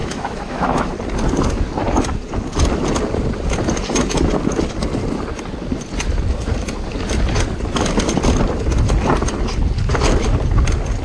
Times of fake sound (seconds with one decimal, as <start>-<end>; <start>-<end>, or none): 0.0-0.9

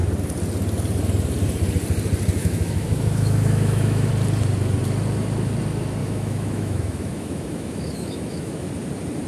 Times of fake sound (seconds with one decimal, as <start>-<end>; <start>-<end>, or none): 2.4-4.1; 6.0-8.7

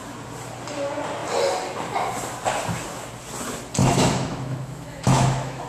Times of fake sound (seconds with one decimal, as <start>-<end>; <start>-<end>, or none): 3.8-5.7

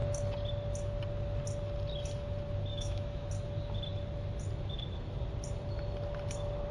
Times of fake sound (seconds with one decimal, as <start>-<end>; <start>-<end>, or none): 2.7-3.3